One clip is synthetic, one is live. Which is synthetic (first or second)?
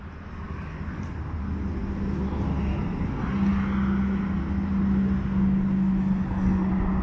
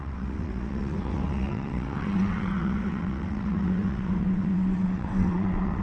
second